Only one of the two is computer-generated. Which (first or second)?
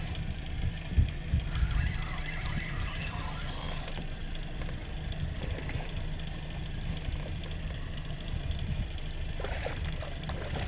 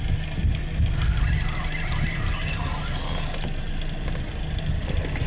first